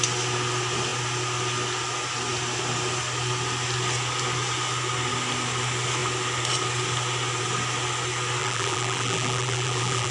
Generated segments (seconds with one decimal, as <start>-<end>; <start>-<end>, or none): 8.4-10.1